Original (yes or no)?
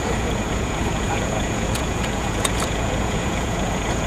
no